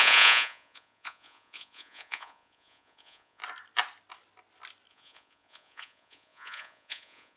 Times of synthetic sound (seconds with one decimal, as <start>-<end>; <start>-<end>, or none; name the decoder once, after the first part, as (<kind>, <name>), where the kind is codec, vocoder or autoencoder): 0.0-3.4 (vocoder, Vocos); 4.9-7.4